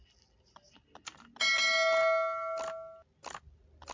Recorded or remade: recorded